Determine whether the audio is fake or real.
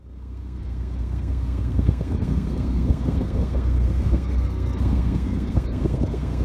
fake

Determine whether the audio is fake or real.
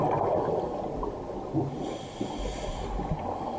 real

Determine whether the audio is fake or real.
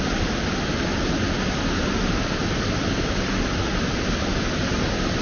real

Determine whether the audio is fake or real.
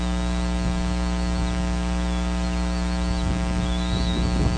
real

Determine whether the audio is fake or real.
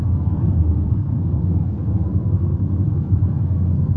fake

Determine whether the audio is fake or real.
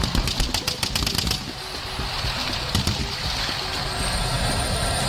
real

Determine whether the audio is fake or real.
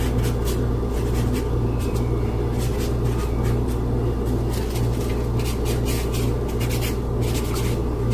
real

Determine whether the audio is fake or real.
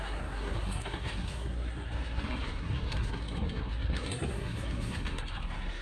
fake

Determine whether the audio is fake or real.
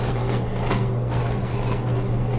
fake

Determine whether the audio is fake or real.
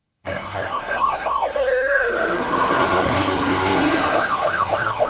fake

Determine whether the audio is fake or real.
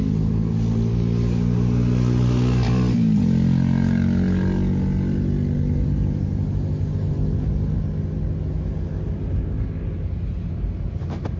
real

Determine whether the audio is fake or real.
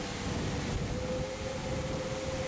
real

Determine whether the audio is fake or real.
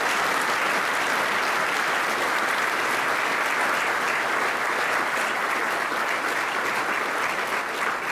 real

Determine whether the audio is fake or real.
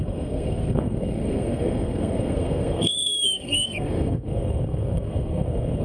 fake